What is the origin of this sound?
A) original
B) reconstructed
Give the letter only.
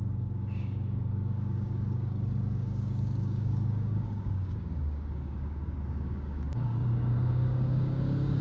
B